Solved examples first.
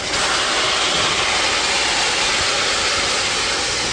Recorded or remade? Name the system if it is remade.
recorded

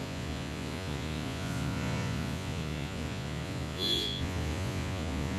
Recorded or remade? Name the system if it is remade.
remade, vocoder, Vocos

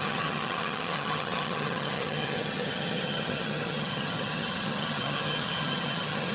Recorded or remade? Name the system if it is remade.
remade, vocoder, HiFi-GAN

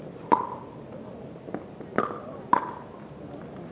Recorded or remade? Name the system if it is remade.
recorded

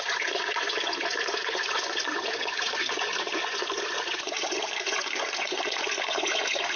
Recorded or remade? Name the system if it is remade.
remade, vocoder, Vocos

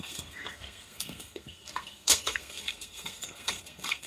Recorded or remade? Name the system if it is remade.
remade, codec, SNAC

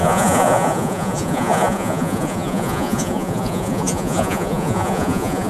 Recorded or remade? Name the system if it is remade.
remade, vocoder, Vocos